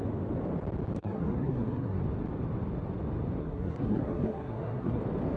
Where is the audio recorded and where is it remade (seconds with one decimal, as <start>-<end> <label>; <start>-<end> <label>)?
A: 0.0-1.0 recorded; 1.0-2.0 remade; 2.0-3.4 recorded; 3.4-5.0 remade; 5.0-5.4 recorded